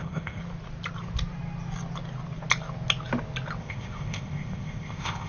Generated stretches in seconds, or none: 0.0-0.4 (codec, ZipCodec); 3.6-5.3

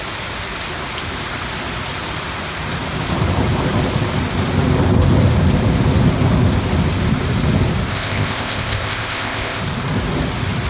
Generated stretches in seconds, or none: 7.9-9.6 (codec, ZipCodec)